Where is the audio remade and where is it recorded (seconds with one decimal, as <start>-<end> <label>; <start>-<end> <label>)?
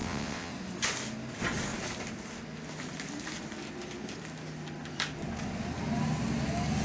0.0-0.5 remade; 0.5-6.8 recorded